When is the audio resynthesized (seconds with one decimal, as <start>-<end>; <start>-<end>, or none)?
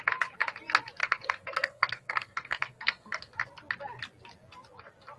1.0-3.3